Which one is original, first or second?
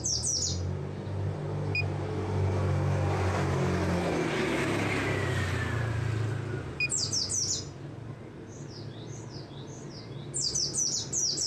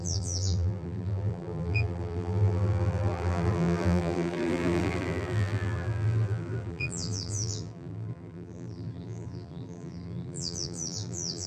first